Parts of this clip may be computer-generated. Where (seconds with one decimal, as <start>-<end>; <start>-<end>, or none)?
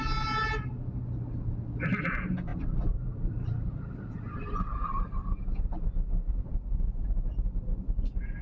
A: 2.5-5.4